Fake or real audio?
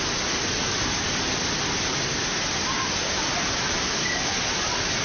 real